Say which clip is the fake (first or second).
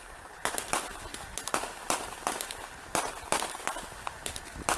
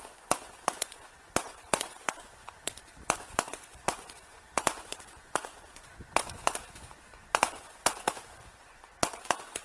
second